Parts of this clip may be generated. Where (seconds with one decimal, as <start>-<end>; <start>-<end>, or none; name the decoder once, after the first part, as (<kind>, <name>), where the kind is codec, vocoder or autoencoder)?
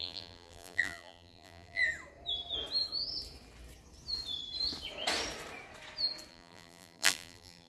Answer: 0.0-1.8 (vocoder, BigVGAN v2); 6.3-7.7